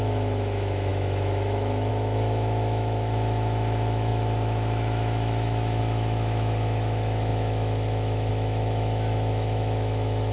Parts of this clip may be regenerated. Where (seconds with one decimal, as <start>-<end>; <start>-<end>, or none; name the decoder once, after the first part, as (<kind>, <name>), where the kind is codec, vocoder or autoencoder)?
0.0-10.3 (autoencoder, DAC-VAE)